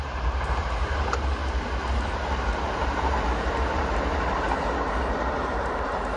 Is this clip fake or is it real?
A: fake